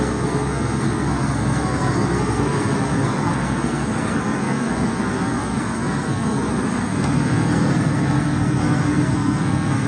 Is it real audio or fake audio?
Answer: fake